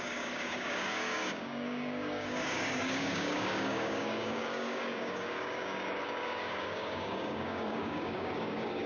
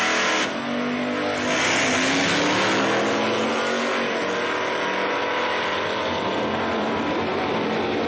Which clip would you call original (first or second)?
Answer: second